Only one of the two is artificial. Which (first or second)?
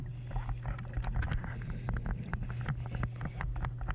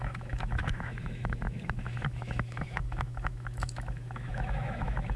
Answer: second